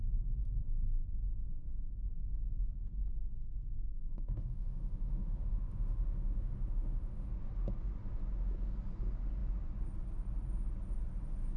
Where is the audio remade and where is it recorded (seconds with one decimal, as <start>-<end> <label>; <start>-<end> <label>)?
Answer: 0.0-0.4 recorded; 0.4-2.1 remade; 2.1-3.9 recorded; 3.9-7.3 remade; 7.3-11.6 recorded